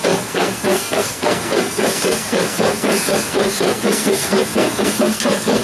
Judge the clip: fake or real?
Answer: fake